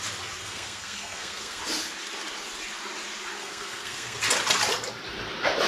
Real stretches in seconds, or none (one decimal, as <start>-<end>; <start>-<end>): 0.0-0.4; 1.6-3.4; 4.2-5.7